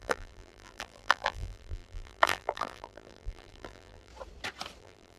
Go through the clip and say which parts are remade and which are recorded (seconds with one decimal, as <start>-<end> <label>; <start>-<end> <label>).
0.0-4.1 remade; 4.1-4.8 recorded; 4.8-5.2 remade